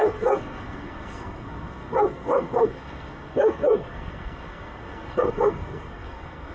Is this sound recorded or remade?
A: remade